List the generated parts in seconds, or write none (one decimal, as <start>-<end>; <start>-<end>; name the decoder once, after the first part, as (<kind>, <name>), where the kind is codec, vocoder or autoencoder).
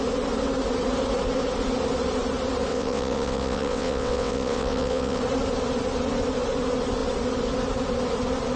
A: 2.7-5.2 (vocoder, WaveNeXt)